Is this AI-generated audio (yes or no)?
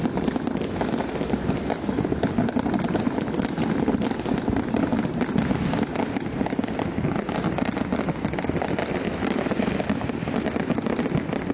no